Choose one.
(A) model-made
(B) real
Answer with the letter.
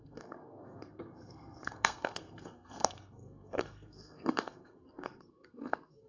A